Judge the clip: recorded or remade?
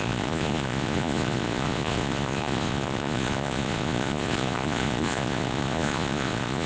remade